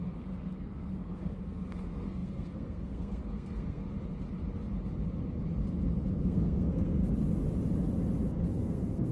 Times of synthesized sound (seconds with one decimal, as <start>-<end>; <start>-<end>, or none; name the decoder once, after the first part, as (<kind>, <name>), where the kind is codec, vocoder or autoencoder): 0.0-3.8 (codec, SNAC); 6.1-7.0; 8.5-9.1